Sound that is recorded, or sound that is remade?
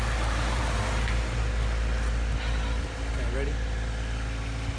recorded